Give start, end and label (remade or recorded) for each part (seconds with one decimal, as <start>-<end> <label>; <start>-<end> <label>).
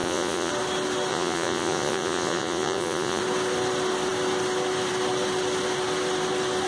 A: 0.0-0.5 remade; 0.5-1.1 recorded; 1.1-3.2 remade; 3.2-6.7 recorded